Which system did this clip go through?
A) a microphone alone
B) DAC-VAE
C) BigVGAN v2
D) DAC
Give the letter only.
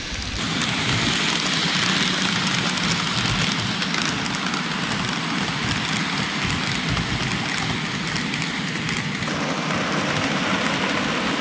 A